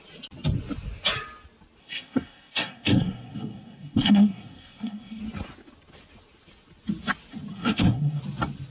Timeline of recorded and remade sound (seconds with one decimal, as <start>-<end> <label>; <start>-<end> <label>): 0.0-1.8 recorded; 1.8-5.2 remade; 5.2-7.5 recorded; 7.5-8.2 remade; 8.2-8.7 recorded